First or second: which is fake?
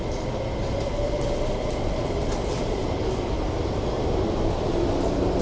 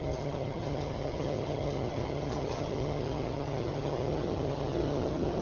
second